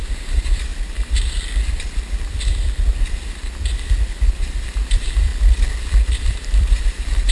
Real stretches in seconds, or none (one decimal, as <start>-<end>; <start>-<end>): 0.7-4.6; 5.3-5.8